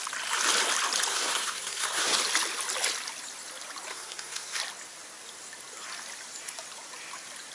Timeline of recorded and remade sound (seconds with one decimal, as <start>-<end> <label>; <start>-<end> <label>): 0.0-1.1 recorded; 1.1-2.2 remade; 2.2-3.9 recorded; 3.9-4.6 remade; 4.6-7.5 recorded